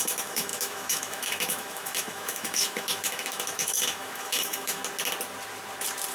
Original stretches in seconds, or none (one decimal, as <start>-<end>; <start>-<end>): 4.8-6.1